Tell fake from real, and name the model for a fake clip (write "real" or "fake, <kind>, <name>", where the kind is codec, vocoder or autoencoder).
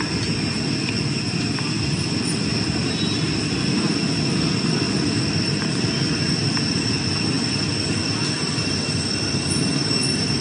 real